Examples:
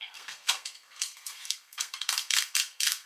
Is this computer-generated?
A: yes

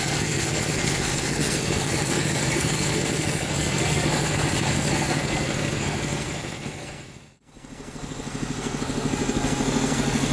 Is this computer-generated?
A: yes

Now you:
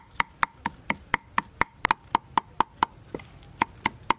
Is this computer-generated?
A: no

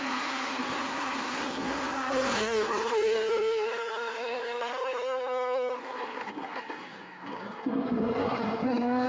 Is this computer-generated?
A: yes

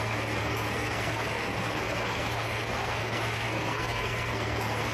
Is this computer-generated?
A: yes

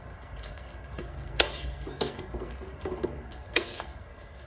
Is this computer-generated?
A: yes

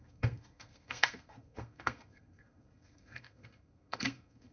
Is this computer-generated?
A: yes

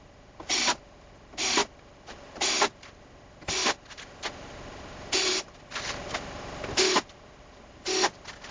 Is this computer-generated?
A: no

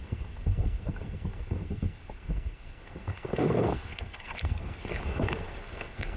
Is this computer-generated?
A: yes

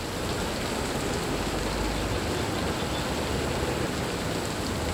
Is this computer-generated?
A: no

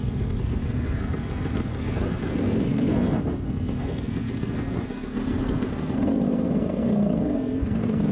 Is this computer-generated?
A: yes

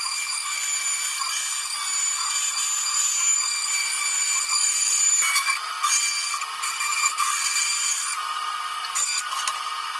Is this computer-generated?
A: no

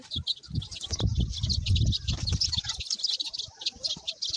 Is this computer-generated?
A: no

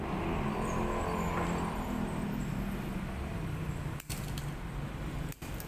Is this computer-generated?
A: no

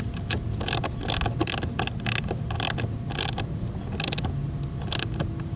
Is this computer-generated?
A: no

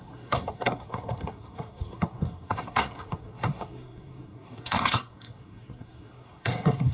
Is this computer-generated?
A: yes